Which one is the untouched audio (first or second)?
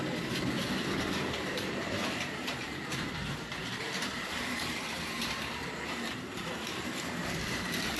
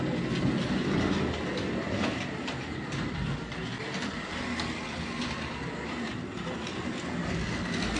second